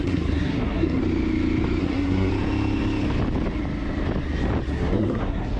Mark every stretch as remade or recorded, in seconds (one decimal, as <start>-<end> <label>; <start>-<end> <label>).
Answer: 0.0-1.0 remade; 1.0-1.8 recorded; 1.8-2.3 remade; 2.3-4.7 recorded; 4.7-5.6 remade